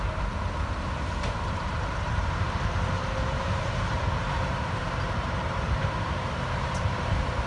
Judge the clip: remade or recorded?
remade